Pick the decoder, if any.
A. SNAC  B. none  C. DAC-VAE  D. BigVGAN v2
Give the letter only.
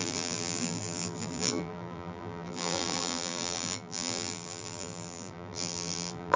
D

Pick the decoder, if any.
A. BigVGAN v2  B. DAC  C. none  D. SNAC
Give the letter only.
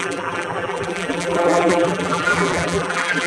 A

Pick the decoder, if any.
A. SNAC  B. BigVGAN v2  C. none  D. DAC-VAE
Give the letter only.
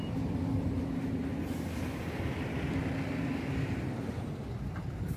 C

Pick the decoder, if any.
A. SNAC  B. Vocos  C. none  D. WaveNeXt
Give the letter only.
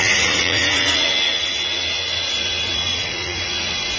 B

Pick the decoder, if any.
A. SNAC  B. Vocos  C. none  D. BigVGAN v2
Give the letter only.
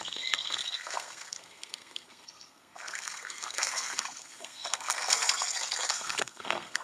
A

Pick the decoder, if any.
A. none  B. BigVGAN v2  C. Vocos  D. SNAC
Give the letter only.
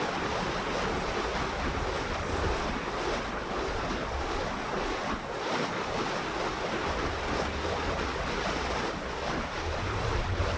A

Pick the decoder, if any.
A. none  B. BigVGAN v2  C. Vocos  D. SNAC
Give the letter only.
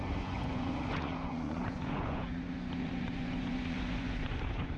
C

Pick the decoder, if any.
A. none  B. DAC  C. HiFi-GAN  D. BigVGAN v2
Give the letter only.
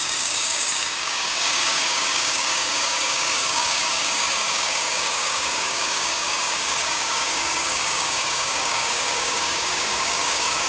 B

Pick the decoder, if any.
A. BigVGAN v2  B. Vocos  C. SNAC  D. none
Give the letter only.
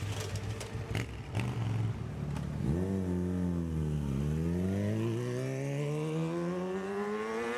D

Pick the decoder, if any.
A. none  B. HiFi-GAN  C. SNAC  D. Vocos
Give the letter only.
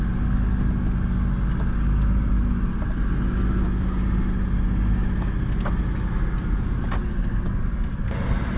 A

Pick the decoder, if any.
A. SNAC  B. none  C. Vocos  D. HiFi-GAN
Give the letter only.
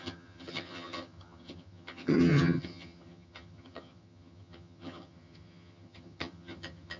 D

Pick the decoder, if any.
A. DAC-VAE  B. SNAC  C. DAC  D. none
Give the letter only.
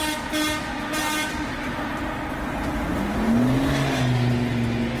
D